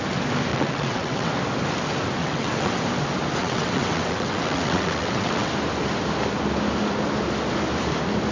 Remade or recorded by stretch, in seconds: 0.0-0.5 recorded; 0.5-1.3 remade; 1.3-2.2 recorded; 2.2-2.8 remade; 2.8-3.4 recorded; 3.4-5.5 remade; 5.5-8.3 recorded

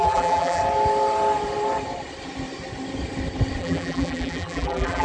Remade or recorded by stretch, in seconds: 0.0-0.6 remade; 0.6-3.6 recorded; 3.6-5.0 remade

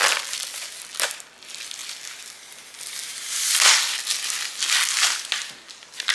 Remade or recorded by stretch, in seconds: 0.0-6.1 recorded